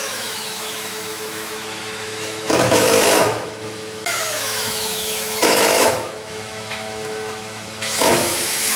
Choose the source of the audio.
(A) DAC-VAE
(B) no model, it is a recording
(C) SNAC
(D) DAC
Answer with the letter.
A